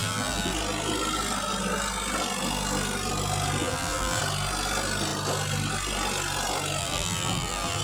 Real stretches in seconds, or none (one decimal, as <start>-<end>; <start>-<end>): 0.5-3.6; 4.2-6.8